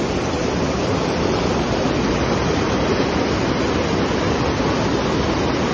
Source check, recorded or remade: recorded